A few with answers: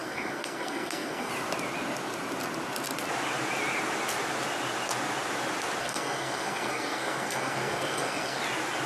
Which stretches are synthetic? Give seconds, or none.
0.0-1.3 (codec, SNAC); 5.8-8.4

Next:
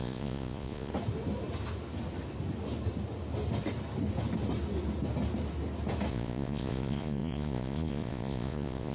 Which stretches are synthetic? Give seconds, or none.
0.0-0.9 (vocoder, Vocos); 6.1-8.9

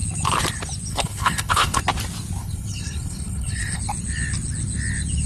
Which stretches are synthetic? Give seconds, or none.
0.9-1.8 (codec, HILCodec); 2.4-3.8

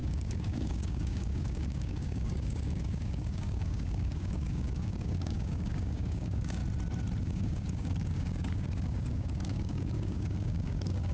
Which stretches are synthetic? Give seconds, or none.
0.0-6.6 (codec, DAC); 7.2-11.1

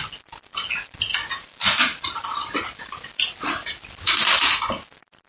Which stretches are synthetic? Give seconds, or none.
none

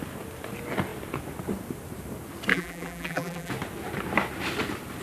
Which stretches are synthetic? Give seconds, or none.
2.5-3.5 (vocoder, BigVGAN v2)

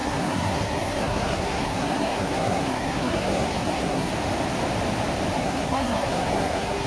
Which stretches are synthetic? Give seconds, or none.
0.0-4.1 (codec, SNAC); 5.4-6.9

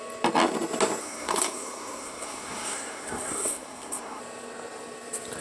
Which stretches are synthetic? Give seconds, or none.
1.0-4.2 (codec, SNAC)